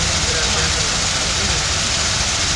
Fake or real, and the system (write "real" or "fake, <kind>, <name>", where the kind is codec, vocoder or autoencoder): real